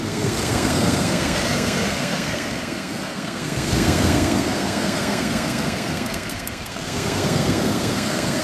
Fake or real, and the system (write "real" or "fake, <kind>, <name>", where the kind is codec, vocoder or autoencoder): fake, codec, SNAC